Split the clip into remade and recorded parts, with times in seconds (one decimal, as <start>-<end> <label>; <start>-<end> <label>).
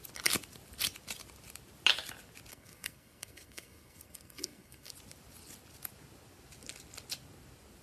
0.0-2.5 recorded; 2.5-4.9 remade; 4.9-7.8 recorded